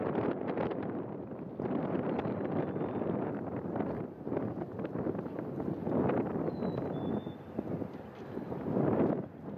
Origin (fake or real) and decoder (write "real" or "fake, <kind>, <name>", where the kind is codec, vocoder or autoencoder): fake, vocoder, BigVGAN v2